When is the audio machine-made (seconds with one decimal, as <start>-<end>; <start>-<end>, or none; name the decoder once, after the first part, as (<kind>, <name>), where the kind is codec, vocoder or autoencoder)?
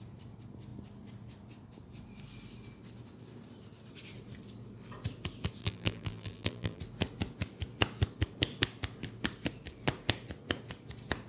5.6-6.8 (vocoder, BigVGAN v2)